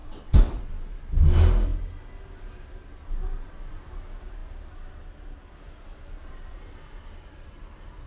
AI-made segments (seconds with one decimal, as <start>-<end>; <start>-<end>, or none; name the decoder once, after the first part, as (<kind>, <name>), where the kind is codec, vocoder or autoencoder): 0.0-0.7 (vocoder, WaveNeXt)